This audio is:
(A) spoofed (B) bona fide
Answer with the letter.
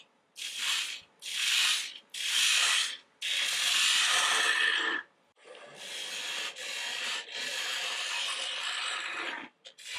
B